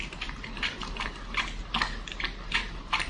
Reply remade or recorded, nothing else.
recorded